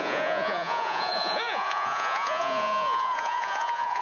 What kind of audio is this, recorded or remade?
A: remade